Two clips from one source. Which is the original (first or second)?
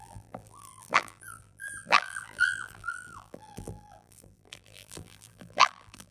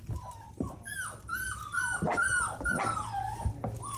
second